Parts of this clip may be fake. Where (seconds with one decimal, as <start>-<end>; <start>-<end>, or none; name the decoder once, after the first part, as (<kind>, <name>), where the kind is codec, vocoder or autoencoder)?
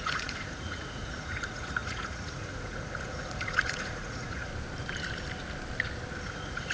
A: 0.0-4.5 (vocoder, Vocos); 6.2-6.7